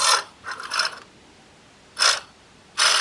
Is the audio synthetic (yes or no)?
no